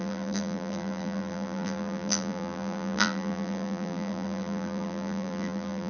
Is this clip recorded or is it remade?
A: remade